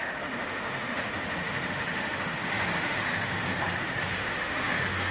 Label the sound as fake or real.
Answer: fake